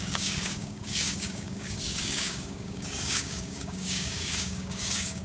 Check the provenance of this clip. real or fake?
fake